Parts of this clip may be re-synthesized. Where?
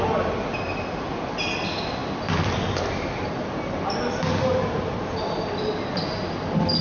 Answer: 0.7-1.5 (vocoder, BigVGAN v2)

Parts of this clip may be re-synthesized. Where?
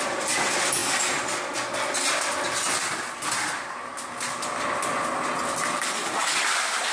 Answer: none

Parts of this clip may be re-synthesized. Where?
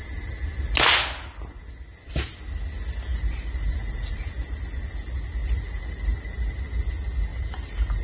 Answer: 3.1-4.2 (vocoder, BigVGAN v2); 5.4-6.6; 7.3-8.0